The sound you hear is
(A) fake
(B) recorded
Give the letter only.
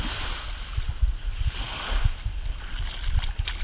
B